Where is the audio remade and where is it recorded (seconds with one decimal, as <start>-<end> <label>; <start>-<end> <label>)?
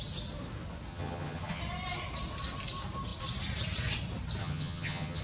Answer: 0.0-0.9 recorded; 0.9-1.6 remade; 1.6-4.4 recorded; 4.4-5.2 remade